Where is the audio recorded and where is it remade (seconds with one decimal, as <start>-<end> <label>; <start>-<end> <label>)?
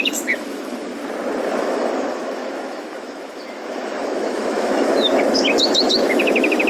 0.0-0.9 remade; 0.9-1.6 recorded; 1.6-6.7 remade